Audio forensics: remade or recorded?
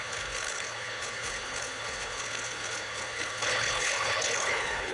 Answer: remade